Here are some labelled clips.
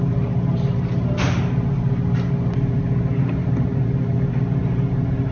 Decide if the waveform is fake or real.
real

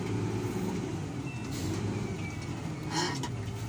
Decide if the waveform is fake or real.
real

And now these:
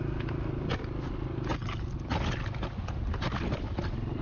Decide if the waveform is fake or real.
real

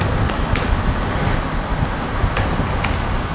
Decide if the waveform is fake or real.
real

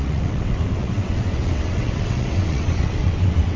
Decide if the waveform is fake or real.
fake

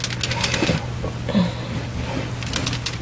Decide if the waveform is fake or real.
real